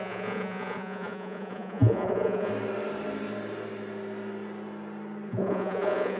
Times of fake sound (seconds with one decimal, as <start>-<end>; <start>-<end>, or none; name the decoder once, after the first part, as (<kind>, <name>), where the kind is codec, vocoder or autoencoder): 0.0-2.5 (vocoder, Vocos); 5.3-6.2